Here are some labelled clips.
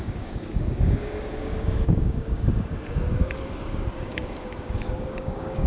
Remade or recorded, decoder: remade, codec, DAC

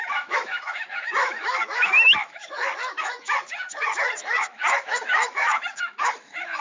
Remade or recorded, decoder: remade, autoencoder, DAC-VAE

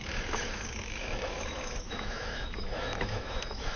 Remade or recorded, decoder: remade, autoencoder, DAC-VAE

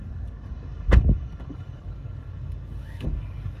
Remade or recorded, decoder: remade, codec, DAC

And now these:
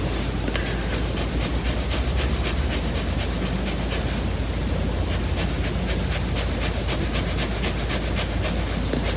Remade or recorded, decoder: recorded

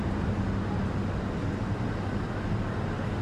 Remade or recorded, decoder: recorded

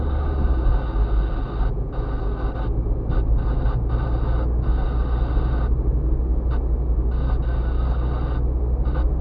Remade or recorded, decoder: recorded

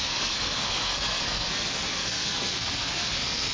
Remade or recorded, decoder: remade, codec, SNAC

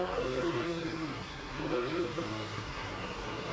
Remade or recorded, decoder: remade, codec, SNAC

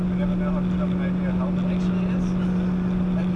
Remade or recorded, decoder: recorded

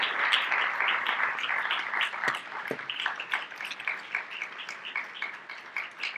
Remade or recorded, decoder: recorded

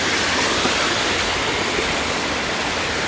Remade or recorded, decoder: recorded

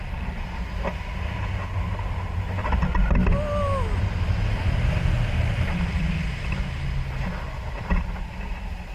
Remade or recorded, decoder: recorded